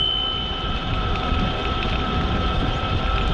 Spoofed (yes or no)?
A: no